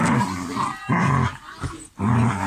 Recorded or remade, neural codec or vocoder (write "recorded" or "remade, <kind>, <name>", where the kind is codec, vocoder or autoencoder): recorded